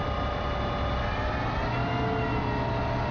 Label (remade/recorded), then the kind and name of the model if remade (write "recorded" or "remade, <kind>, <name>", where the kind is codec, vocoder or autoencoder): recorded